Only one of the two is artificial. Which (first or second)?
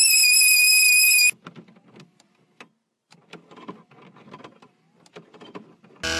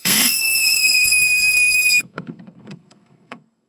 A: second